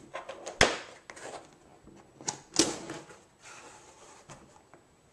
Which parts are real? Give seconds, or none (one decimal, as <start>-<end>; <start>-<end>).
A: 0.0-5.1